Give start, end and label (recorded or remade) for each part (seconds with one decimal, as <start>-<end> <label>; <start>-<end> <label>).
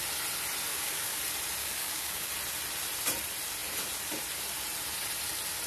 0.0-0.7 recorded; 0.7-1.2 remade; 1.2-1.6 recorded; 1.6-2.3 remade; 2.3-5.7 recorded